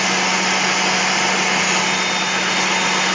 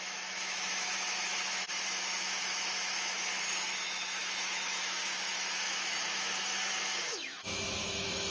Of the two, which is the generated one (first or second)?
second